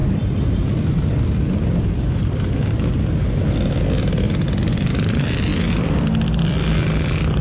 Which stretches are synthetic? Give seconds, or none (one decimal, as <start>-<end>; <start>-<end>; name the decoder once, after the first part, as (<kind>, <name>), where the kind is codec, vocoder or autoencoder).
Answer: 0.0-2.6 (vocoder, BigVGAN v2); 4.2-7.4